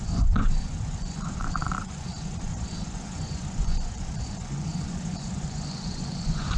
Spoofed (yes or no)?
yes